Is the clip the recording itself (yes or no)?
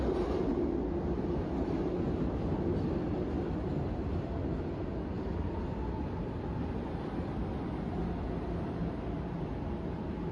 yes